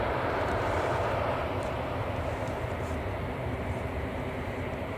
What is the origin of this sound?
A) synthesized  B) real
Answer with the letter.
A